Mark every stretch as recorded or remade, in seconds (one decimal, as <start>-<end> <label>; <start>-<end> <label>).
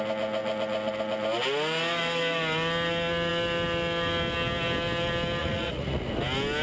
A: 0.0-5.4 recorded; 5.4-6.1 remade; 6.1-6.6 recorded